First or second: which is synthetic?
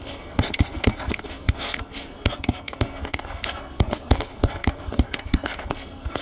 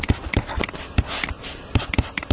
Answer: first